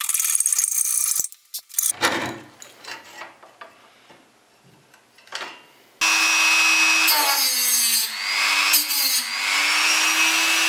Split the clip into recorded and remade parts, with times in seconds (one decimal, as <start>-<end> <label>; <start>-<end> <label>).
0.0-10.7 recorded